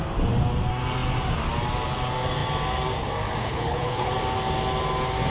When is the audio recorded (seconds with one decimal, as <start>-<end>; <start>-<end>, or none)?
0.0-3.4; 4.1-5.3